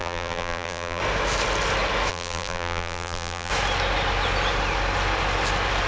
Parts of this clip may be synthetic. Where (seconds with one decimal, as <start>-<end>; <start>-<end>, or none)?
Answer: 0.0-1.0; 2.1-3.5